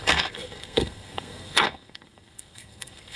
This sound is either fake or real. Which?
fake